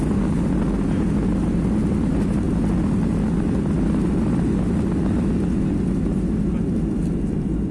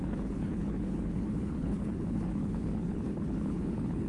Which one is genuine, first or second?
first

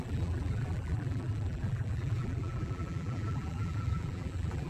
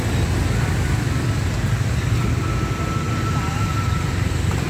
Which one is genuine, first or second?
second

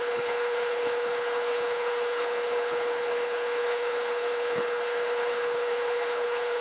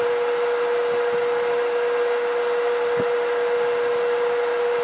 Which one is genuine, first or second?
second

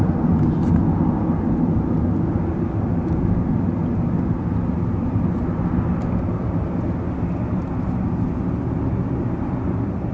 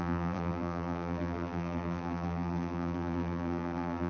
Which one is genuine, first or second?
first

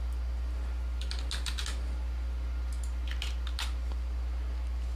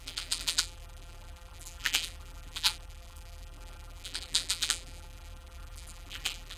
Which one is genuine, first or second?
first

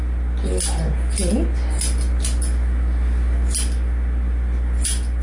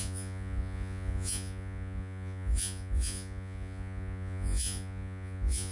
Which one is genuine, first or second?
first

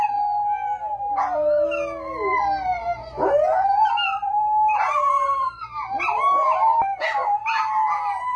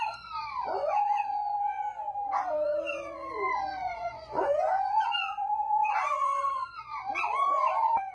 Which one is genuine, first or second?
first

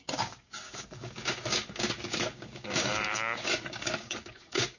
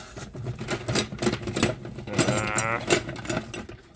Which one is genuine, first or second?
second